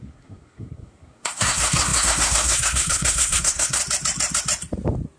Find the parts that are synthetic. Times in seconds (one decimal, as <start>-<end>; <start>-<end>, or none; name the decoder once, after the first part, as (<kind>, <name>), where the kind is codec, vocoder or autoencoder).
0.0-3.8 (codec, SNAC)